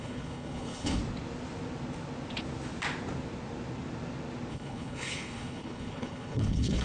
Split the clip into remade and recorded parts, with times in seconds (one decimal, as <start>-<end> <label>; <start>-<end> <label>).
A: 0.0-1.0 remade; 1.0-4.5 recorded; 4.5-6.8 remade